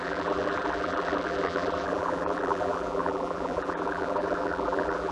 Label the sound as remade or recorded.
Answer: remade